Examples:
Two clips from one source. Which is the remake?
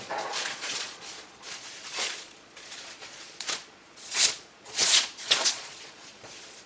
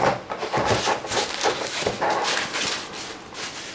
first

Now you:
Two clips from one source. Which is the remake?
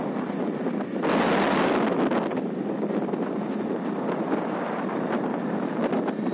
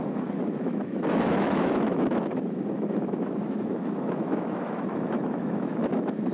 second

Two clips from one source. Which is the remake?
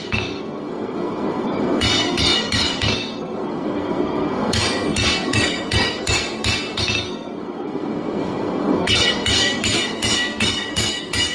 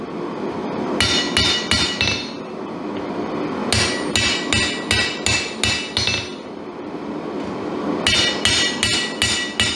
first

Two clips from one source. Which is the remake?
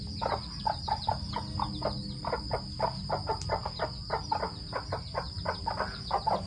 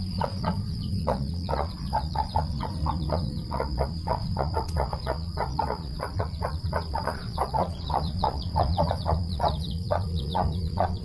second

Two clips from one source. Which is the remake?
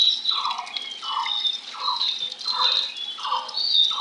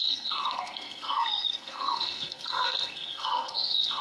second